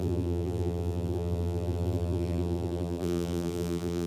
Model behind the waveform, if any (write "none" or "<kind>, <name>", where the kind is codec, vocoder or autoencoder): vocoder, BigVGAN v2